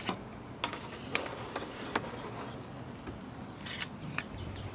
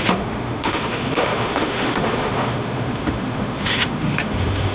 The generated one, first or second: second